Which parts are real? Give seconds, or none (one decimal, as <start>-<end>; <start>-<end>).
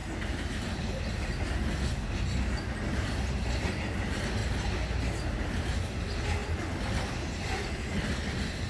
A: 0.0-8.7